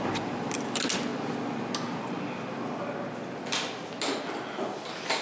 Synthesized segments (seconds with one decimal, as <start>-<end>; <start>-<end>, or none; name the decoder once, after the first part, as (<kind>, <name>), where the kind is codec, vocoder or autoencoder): none